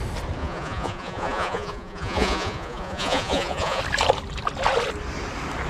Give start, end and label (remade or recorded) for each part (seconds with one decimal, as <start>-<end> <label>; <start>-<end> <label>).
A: 0.0-0.4 recorded; 0.4-3.8 remade; 3.8-5.7 recorded